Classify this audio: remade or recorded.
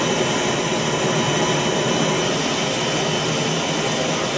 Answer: recorded